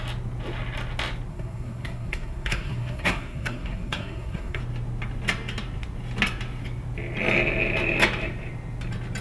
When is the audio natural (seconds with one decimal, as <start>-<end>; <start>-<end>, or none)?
0.0-1.3; 4.6-9.2